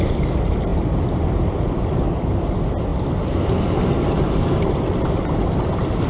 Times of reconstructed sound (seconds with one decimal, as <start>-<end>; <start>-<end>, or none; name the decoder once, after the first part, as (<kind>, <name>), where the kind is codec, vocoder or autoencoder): none